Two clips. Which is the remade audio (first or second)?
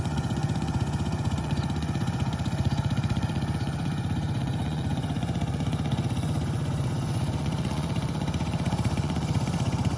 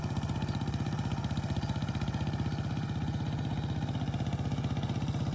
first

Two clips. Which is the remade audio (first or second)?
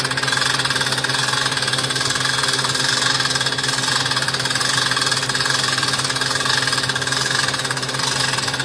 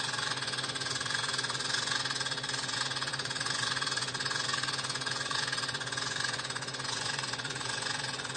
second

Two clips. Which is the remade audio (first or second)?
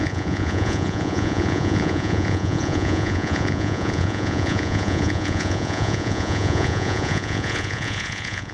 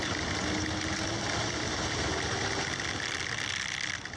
first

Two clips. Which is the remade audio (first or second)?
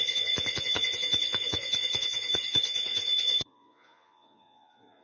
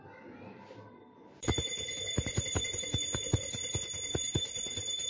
first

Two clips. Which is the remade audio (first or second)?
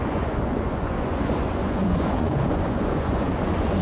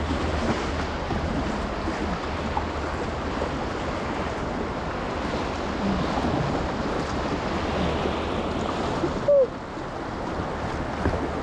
first